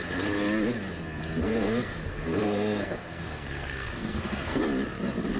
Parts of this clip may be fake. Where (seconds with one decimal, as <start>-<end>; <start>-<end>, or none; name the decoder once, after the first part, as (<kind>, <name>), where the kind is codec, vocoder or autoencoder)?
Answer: 1.4-4.6 (codec, SNAC)